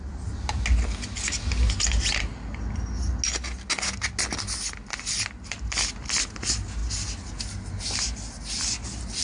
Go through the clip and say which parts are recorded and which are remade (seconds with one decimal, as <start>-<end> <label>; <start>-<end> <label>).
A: 0.0-9.2 recorded